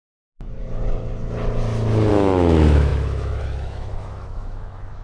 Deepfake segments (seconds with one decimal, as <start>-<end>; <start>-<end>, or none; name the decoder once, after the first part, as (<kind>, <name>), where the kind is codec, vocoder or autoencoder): 2.1-5.0 (autoencoder, DAC-VAE)